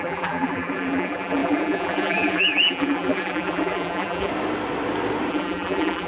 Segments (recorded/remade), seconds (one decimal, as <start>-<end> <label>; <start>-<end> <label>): 0.0-4.3 remade; 4.3-5.3 recorded; 5.3-6.1 remade